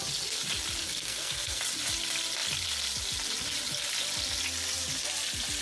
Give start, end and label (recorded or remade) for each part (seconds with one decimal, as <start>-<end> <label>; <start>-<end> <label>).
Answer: 0.0-0.8 recorded; 0.8-1.6 remade; 1.6-5.6 recorded